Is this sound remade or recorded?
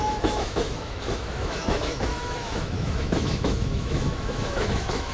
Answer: remade